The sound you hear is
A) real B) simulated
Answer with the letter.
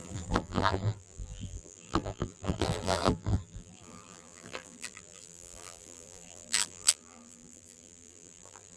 B